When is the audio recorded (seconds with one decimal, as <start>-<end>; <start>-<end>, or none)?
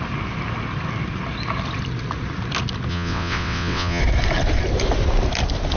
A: 0.0-2.9; 4.0-5.8